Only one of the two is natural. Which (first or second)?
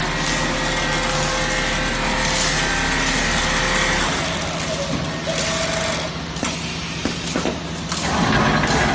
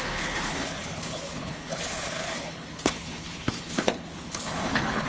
first